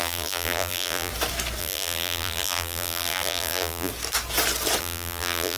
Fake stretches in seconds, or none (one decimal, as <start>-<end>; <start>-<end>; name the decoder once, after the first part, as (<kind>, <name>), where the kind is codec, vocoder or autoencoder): 0.0-1.1 (vocoder, BigVGAN v2); 1.6-3.9; 4.8-5.6